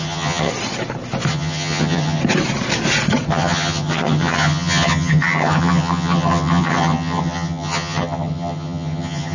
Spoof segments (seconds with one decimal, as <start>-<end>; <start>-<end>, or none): 0.0-0.5; 1.3-2.2; 3.3-9.3